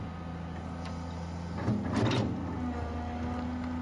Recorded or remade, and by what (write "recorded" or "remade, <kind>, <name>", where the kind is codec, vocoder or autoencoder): recorded